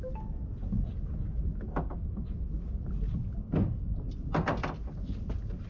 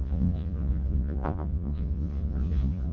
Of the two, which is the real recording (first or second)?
first